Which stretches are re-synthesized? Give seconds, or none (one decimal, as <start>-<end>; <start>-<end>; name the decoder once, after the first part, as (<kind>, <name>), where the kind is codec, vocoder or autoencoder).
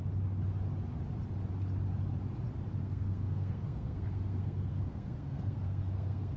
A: 2.8-6.4 (codec, SNAC)